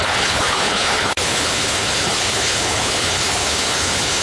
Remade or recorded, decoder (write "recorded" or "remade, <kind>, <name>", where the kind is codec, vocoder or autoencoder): remade, codec, HILCodec